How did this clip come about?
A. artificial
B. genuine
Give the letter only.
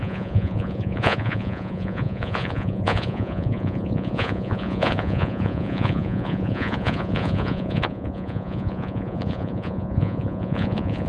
A